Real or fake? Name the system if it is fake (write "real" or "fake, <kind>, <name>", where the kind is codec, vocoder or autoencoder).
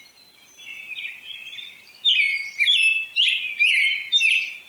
real